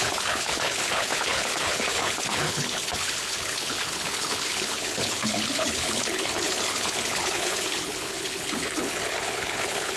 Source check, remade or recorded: remade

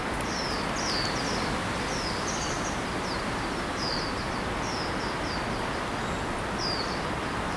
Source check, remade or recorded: recorded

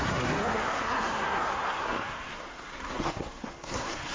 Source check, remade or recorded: remade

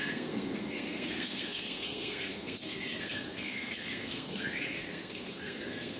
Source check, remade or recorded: remade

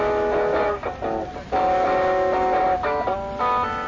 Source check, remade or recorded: recorded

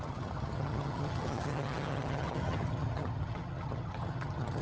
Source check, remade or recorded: remade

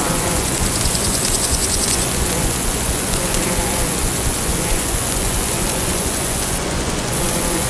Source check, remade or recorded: remade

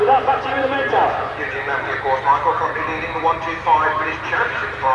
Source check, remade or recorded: recorded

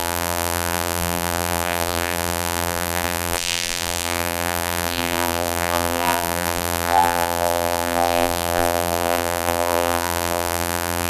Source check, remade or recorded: remade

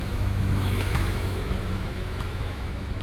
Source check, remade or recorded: remade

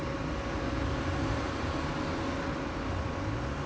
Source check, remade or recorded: recorded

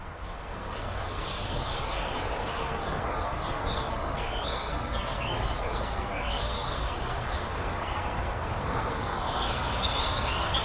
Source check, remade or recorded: remade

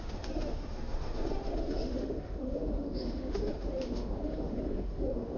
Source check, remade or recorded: remade